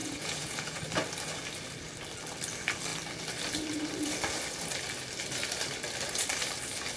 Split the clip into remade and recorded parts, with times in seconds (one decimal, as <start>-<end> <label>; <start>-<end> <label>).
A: 0.0-0.8 remade; 0.8-7.0 recorded

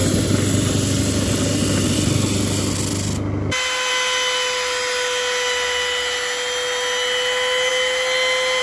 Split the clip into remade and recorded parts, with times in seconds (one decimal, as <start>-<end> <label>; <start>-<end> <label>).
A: 0.0-8.6 recorded

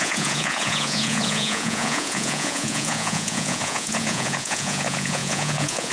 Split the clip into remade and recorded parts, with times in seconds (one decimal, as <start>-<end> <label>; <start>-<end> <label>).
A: 0.0-5.9 remade

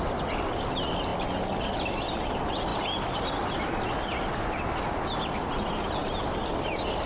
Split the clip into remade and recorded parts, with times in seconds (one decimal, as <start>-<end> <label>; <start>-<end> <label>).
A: 0.0-7.1 recorded

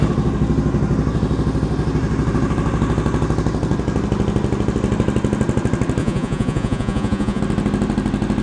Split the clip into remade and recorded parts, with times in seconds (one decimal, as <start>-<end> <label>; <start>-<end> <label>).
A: 0.0-6.0 recorded; 6.0-7.4 remade; 7.4-8.4 recorded

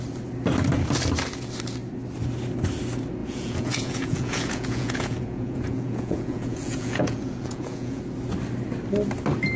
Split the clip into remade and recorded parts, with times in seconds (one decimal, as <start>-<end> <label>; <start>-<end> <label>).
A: 0.0-3.2 recorded; 3.2-8.0 remade; 8.0-9.6 recorded

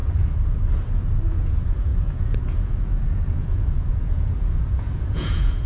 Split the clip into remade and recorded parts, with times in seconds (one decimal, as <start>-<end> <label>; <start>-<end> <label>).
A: 0.0-1.3 recorded; 1.3-5.7 remade